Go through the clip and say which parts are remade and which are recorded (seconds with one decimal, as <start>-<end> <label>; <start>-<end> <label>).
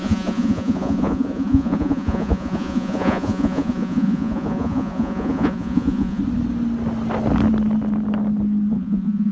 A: 0.0-6.2 remade; 6.2-8.7 recorded; 8.7-9.3 remade